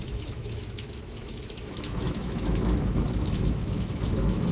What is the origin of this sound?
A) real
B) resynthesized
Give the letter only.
B